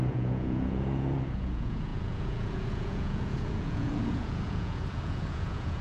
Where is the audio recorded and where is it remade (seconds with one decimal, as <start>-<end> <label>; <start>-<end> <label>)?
0.0-5.8 remade